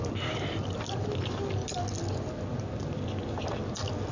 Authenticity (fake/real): real